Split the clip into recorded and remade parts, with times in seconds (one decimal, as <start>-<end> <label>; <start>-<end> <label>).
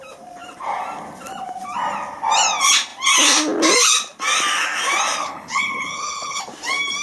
0.0-5.2 recorded; 5.2-6.4 remade; 6.4-7.0 recorded